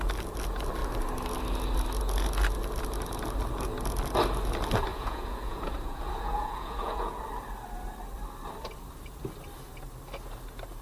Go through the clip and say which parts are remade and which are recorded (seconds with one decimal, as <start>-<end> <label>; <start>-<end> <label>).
0.0-4.9 recorded; 4.9-7.2 remade; 7.2-10.8 recorded